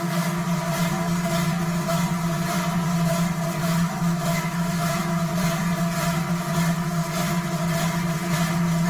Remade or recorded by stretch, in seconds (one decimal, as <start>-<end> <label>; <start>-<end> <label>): 0.0-3.6 recorded; 3.6-5.3 remade; 5.3-8.9 recorded